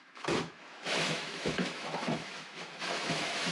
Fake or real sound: fake